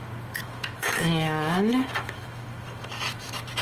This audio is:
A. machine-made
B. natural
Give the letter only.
A